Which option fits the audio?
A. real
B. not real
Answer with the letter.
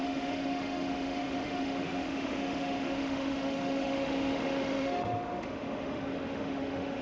B